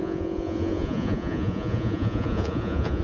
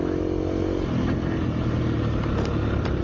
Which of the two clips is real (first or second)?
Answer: second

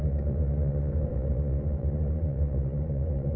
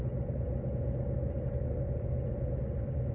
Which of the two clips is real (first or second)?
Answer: second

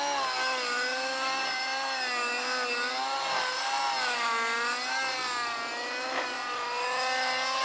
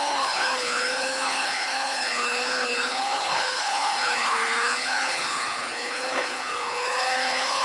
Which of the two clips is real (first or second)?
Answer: first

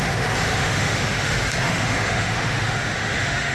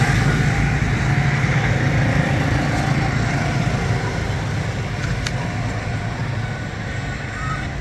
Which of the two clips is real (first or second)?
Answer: second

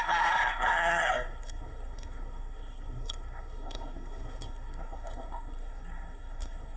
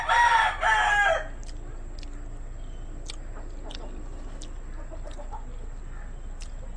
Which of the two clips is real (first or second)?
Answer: second